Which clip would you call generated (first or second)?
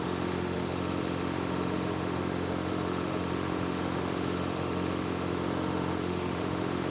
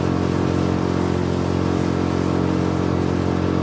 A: first